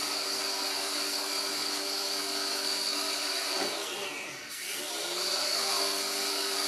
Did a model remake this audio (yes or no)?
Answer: yes